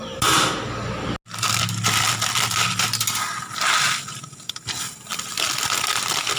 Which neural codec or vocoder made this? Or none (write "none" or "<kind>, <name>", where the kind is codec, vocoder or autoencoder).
none